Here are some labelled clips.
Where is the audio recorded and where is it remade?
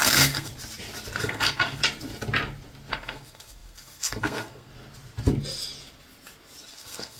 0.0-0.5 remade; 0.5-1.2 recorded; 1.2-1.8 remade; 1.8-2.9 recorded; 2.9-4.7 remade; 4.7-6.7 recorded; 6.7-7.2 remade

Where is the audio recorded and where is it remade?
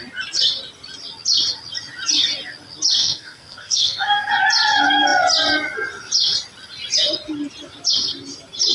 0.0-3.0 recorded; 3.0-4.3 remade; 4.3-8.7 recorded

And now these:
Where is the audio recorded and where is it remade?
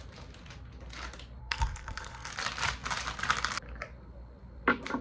0.0-1.4 recorded; 1.4-2.3 remade; 2.3-5.0 recorded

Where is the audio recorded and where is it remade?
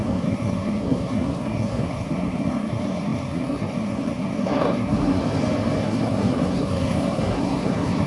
0.0-5.2 remade; 5.2-5.8 recorded; 5.8-8.1 remade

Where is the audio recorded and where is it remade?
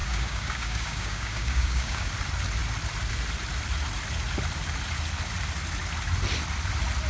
0.0-2.1 remade; 2.1-7.1 recorded